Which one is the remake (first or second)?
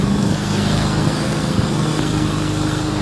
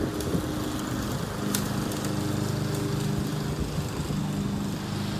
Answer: first